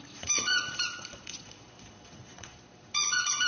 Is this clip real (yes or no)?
no